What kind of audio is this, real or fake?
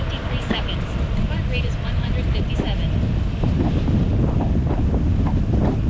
real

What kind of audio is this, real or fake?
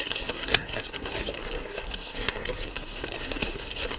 fake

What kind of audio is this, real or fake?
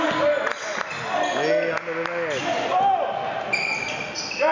real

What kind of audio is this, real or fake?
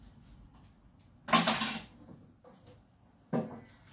real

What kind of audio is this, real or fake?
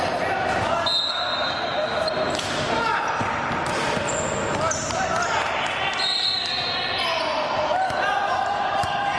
real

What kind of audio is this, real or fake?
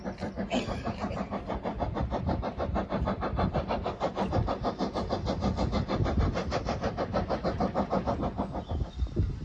real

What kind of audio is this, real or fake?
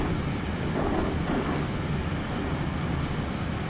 real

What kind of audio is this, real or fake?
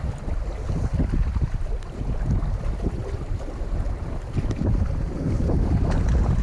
real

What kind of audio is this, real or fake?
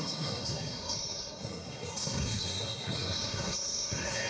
fake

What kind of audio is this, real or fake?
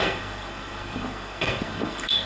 fake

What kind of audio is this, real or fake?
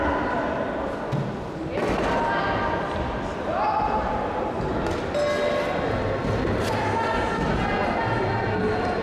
real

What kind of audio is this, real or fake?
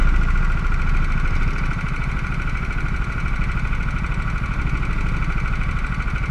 real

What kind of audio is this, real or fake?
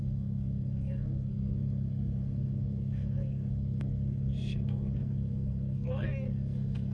fake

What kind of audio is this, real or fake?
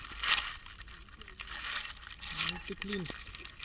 real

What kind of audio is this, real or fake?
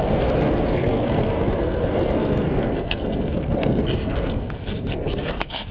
fake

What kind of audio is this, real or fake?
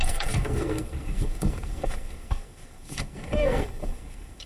fake